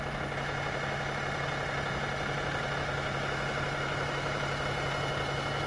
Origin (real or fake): real